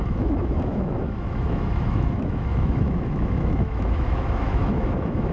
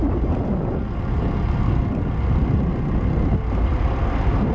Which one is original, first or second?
second